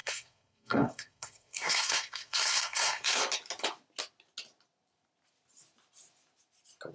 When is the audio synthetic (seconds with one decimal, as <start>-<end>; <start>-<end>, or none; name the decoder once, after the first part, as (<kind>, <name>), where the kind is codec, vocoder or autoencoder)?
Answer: 0.0-3.2 (codec, SNAC)